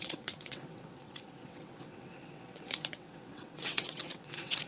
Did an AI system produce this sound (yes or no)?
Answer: yes